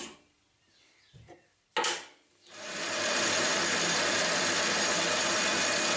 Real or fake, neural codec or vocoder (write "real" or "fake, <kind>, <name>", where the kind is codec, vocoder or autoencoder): real